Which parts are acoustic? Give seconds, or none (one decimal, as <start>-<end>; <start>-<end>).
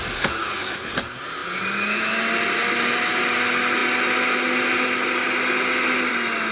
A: 0.0-6.5